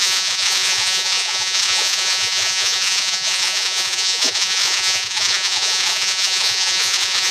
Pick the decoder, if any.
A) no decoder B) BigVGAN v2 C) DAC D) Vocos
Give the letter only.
D